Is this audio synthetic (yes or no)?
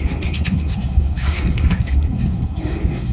yes